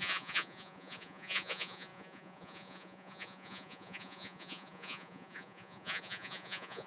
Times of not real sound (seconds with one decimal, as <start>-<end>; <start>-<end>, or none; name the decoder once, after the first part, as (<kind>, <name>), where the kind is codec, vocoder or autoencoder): 0.0-6.9 (vocoder, Vocos)